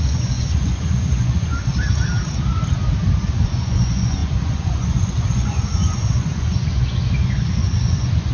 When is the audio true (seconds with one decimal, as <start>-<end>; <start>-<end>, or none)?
1.5-3.3